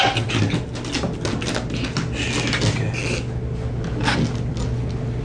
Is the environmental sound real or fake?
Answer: real